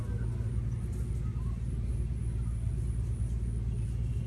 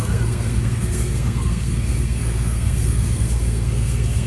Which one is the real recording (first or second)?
first